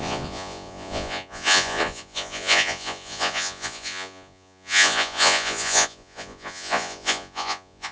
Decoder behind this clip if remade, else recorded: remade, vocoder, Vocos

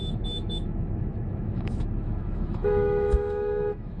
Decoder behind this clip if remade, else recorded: remade, autoencoder, DAC-VAE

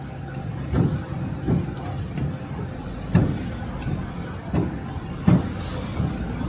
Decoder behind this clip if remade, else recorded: recorded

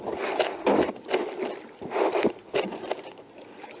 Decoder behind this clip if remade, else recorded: recorded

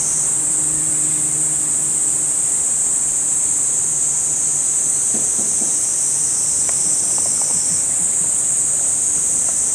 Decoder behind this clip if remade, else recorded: recorded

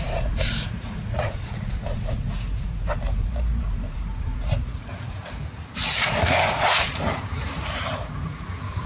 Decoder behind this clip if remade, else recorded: remade, vocoder, Vocos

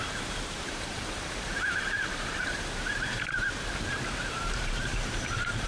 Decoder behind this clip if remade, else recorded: remade, vocoder, BigVGAN v2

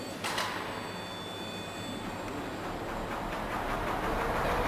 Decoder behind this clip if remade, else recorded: recorded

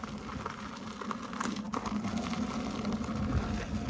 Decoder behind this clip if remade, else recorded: recorded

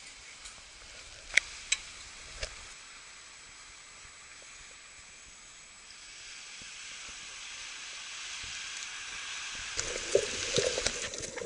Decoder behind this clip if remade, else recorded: recorded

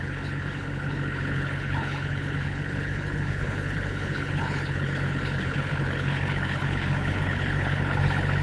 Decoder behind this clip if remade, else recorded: remade, codec, HILCodec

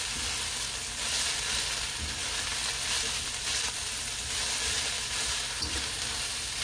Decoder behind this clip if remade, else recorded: recorded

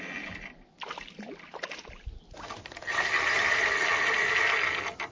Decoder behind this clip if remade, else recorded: recorded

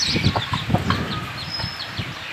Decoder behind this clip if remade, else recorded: remade, vocoder, BigVGAN v2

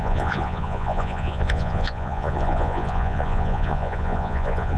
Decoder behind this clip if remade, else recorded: remade, vocoder, Vocos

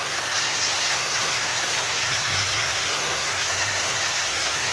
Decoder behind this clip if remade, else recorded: remade, codec, SNAC